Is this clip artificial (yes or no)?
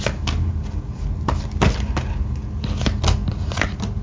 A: no